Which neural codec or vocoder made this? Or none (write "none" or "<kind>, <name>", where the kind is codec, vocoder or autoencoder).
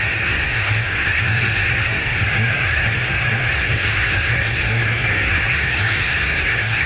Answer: codec, SNAC